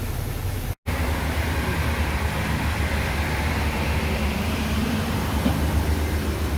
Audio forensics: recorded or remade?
recorded